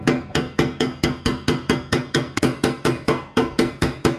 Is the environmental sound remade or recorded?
remade